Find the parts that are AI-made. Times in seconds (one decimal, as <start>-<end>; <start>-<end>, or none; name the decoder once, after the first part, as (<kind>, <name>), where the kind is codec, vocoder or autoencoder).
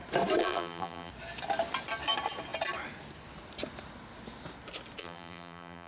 0.4-1.1 (vocoder, BigVGAN v2); 5.0-5.9